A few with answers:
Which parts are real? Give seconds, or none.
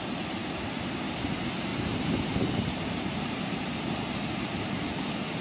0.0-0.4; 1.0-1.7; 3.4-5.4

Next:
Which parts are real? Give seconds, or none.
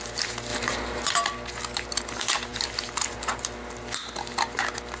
0.0-5.0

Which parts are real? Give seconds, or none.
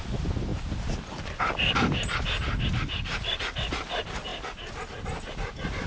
0.0-5.9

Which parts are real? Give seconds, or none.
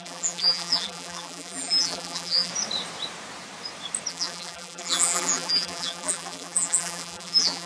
2.5-4.1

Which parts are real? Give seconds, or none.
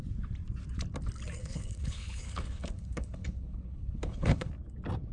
0.0-1.4; 4.5-5.1